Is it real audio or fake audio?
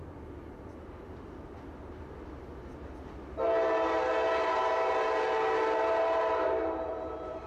real